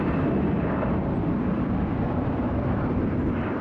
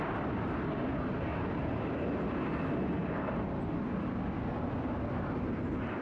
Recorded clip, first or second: second